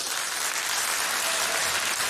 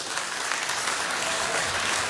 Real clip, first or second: first